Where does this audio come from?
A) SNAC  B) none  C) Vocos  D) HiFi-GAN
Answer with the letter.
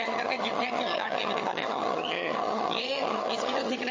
D